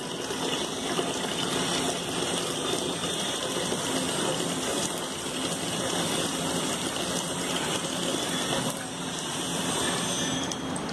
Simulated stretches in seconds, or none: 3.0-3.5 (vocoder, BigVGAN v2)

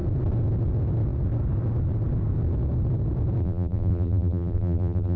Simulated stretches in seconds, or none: 3.4-5.2 (vocoder, BigVGAN v2)